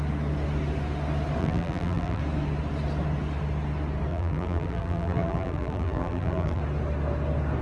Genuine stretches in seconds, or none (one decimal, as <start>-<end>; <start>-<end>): 0.0-1.4; 2.2-4.1; 6.6-7.6